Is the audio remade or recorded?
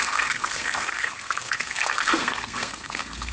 remade